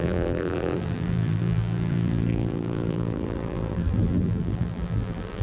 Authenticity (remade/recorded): remade